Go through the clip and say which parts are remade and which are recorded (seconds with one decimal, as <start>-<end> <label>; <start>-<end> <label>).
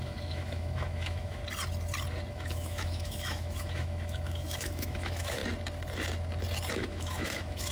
0.0-1.4 remade; 1.4-2.3 recorded; 2.3-5.4 remade; 5.4-6.7 recorded; 6.7-7.7 remade